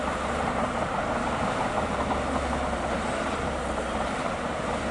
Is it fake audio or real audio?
fake